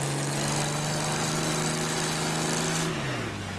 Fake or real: real